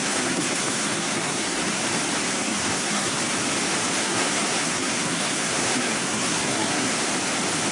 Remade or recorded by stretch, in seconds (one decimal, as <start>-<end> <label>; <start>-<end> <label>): 0.0-1.8 remade; 1.8-2.3 recorded; 2.3-3.2 remade; 3.2-4.0 recorded; 4.0-7.0 remade; 7.0-7.7 recorded